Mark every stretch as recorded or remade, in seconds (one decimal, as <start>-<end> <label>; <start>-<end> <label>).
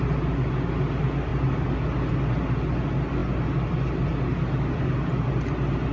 0.0-5.9 recorded